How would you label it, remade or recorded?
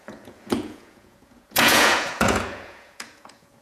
remade